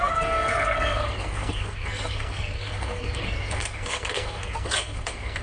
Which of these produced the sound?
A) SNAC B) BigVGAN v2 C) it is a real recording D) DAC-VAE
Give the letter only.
A